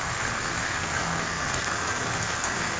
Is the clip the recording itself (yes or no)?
no